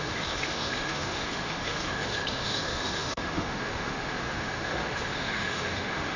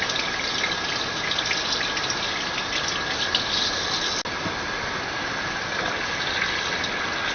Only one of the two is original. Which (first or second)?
second